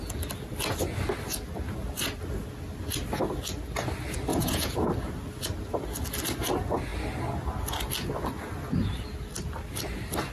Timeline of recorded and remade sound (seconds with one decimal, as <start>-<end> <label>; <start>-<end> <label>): 0.0-4.3 recorded; 4.3-4.9 remade; 4.9-10.3 recorded

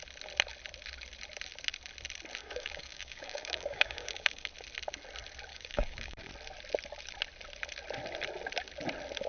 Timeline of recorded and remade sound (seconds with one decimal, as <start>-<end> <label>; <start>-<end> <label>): 0.0-2.4 recorded; 2.4-4.5 remade; 4.5-5.5 recorded; 5.5-6.3 remade; 6.3-9.3 recorded

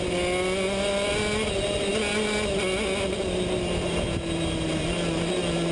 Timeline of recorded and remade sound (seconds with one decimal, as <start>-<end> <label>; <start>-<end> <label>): 0.0-5.7 recorded

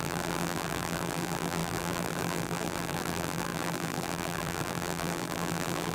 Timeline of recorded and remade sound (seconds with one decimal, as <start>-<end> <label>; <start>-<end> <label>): 0.0-5.9 remade

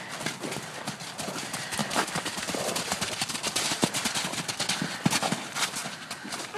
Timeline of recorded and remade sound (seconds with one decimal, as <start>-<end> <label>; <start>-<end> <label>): 0.0-1.8 recorded; 1.8-4.1 remade; 4.1-6.6 recorded

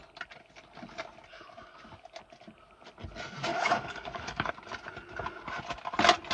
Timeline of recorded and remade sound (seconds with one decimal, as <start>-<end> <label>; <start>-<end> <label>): 0.0-1.3 recorded; 1.3-1.8 remade; 1.8-3.5 recorded; 3.5-4.5 remade; 4.5-6.3 recorded

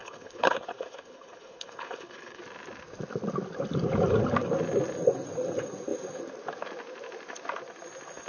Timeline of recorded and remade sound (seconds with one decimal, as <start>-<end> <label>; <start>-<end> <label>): 0.0-2.4 remade; 2.4-8.3 recorded

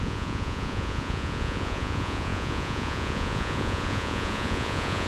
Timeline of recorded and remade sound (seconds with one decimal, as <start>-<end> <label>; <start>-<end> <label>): 0.0-5.1 remade